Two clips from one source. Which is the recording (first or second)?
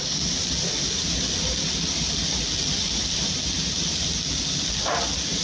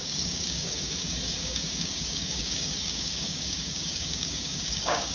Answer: first